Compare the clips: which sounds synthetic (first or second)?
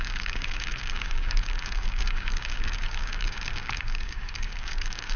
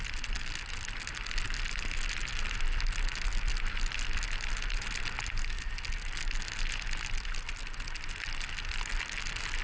first